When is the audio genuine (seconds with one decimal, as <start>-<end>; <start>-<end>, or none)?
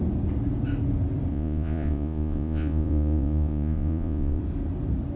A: 0.0-1.3; 4.4-5.2